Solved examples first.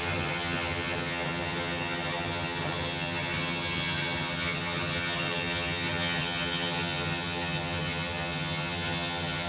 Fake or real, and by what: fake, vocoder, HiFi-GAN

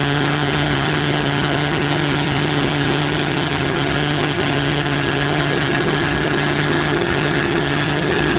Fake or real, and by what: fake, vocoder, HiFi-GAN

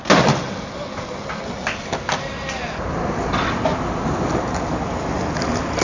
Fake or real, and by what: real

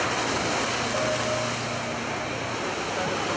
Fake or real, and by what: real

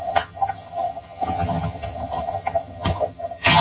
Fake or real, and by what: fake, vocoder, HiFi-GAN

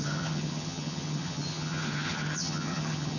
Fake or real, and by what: fake, vocoder, HiFi-GAN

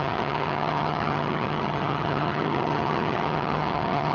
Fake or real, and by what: fake, vocoder, HiFi-GAN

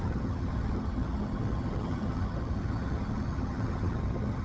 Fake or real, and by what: fake, vocoder, HiFi-GAN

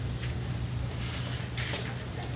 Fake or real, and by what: real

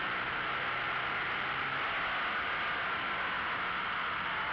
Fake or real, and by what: real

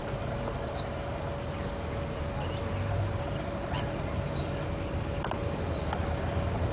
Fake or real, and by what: real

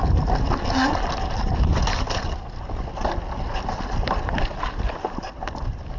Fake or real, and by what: real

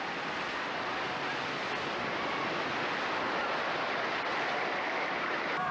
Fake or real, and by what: real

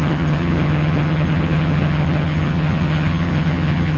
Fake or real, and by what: fake, vocoder, HiFi-GAN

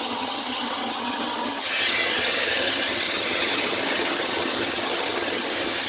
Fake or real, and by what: fake, vocoder, HiFi-GAN